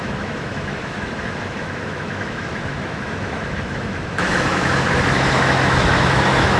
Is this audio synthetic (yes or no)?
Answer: yes